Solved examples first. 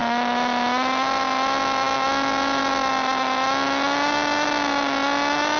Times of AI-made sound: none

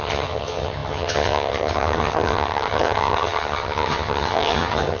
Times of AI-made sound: 0.0-5.0 (vocoder, HiFi-GAN)

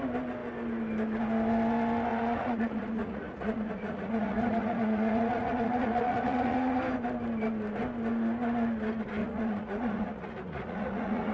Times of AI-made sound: 2.1-6.8 (vocoder, Vocos); 9.2-11.3

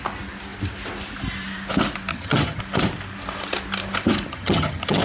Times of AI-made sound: 2.1-2.6 (vocoder, HiFi-GAN); 4.3-5.0

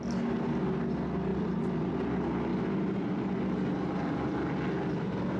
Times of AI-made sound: 1.3-2.0 (vocoder, BigVGAN v2)